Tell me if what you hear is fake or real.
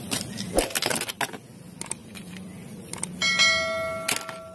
real